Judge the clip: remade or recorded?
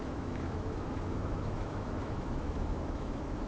remade